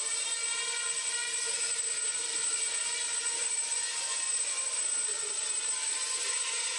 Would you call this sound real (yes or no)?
yes